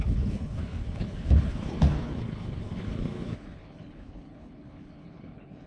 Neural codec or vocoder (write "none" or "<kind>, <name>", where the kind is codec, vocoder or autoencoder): codec, HILCodec